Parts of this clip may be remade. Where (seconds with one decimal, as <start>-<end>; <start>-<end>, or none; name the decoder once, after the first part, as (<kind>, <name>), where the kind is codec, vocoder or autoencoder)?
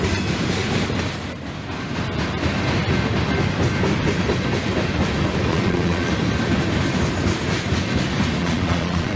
5.5-6.1 (vocoder, Vocos); 8.4-9.2